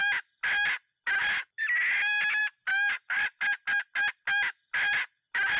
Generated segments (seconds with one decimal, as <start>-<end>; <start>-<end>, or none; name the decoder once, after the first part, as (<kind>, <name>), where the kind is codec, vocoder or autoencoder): none